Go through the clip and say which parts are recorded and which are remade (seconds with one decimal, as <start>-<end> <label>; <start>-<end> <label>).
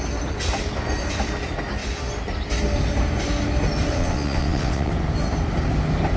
0.0-3.9 recorded; 3.9-4.9 remade; 4.9-6.2 recorded